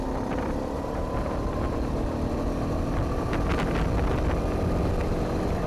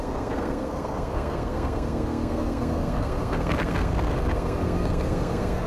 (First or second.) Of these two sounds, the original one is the first